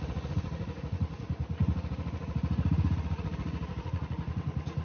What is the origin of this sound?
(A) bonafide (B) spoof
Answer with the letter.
B